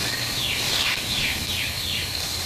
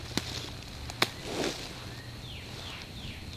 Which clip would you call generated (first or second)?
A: first